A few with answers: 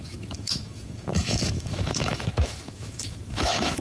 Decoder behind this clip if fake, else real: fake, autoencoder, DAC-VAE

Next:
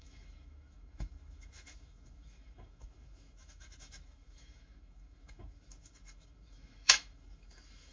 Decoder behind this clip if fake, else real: fake, autoencoder, DAC-VAE